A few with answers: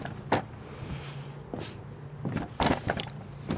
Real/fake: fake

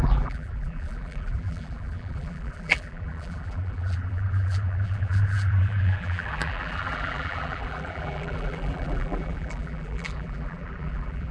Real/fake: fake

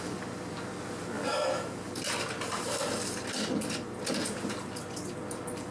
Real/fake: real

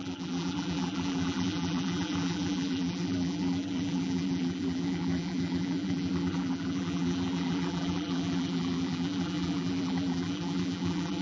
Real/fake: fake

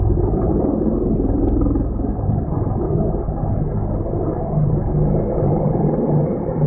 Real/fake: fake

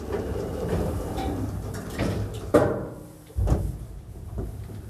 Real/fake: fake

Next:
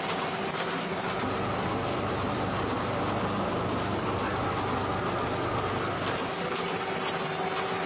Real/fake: real